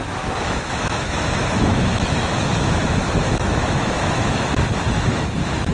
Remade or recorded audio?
remade